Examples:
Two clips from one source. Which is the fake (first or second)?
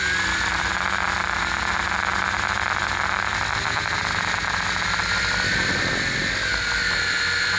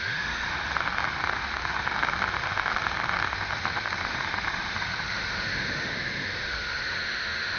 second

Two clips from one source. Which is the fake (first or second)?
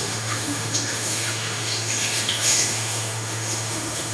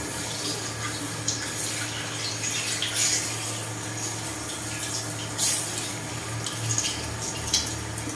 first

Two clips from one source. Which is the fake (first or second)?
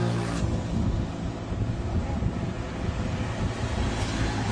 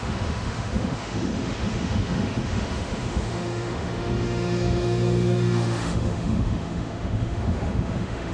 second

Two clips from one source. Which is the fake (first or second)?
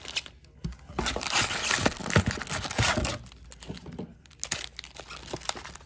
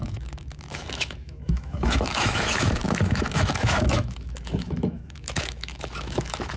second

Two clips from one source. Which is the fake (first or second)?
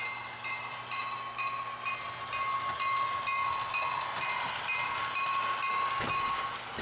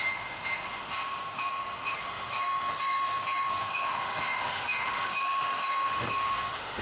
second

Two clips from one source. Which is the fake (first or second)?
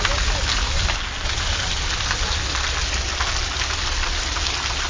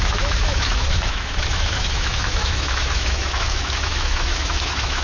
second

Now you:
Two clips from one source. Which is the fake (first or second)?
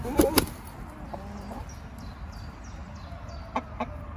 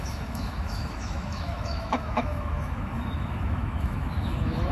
second